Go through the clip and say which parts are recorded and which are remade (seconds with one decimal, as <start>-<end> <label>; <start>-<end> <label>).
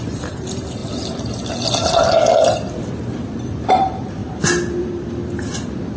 0.0-0.8 remade; 0.8-3.7 recorded; 3.7-6.0 remade